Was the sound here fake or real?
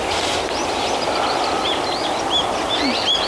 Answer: real